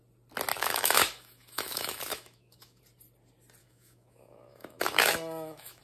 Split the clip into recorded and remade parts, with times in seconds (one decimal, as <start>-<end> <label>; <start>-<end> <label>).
0.0-0.5 recorded; 0.5-2.8 remade; 2.8-3.6 recorded; 3.6-5.8 remade